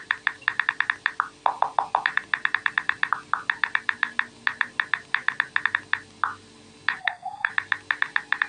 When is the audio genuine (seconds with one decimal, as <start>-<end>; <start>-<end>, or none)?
0.0-7.0; 7.5-8.5